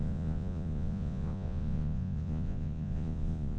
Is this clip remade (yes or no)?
yes